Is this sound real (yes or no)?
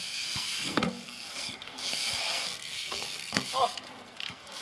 no